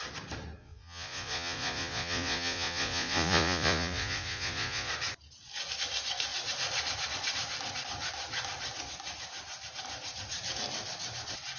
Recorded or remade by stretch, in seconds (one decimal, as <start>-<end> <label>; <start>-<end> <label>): 0.0-0.6 recorded; 0.6-4.9 remade; 4.9-11.6 recorded